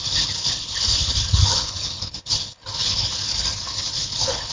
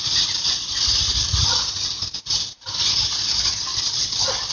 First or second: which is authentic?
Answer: second